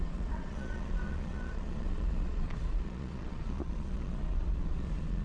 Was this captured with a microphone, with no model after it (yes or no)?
no